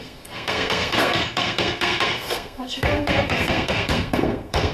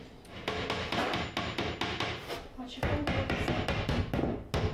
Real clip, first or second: second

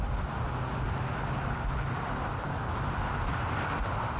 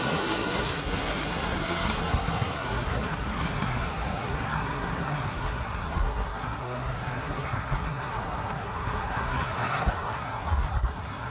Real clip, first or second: first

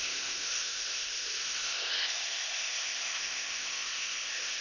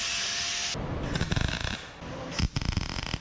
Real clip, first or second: second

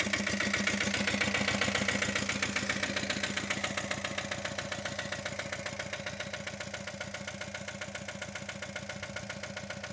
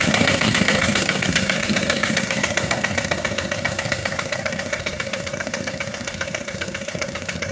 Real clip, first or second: first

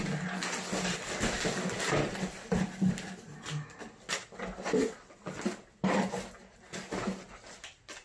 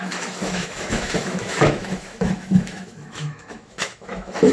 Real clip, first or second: first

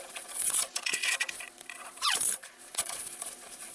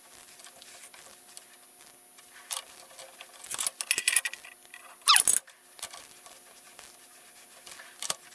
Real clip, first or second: second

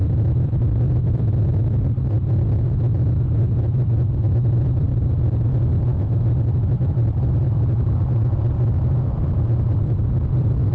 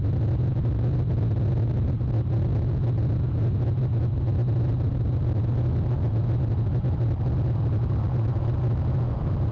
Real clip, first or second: second